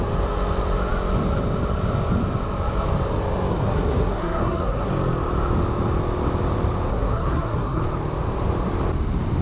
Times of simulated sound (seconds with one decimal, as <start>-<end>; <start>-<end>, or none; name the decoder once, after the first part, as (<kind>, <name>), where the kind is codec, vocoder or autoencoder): 3.5-4.9 (codec, SNAC); 6.9-7.8